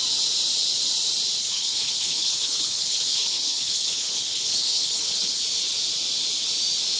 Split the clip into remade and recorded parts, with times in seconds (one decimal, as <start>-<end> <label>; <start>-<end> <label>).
0.0-1.4 recorded; 1.4-5.4 remade; 5.4-7.0 recorded